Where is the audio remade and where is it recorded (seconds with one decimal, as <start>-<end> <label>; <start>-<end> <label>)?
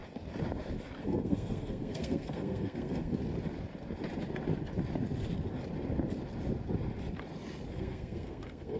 0.0-1.0 recorded; 1.0-3.2 remade; 3.2-7.7 recorded; 7.7-8.8 remade